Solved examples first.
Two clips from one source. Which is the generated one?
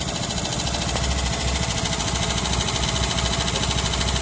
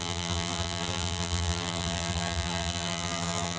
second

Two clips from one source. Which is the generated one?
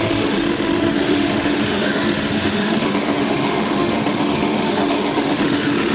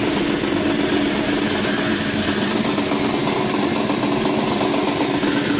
first